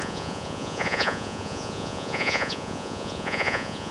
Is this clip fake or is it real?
fake